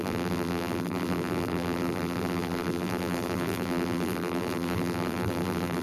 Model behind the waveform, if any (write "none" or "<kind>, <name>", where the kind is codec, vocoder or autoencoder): vocoder, BigVGAN v2